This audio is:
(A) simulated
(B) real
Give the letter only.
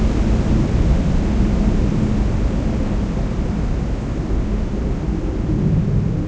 B